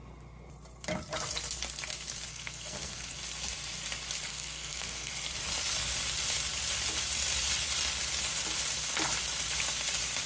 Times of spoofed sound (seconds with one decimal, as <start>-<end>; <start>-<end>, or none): 2.3-3.2; 4.3-5.1